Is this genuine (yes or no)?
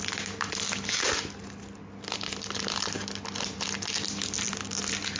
yes